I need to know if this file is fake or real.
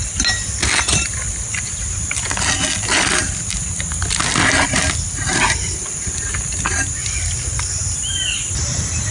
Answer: real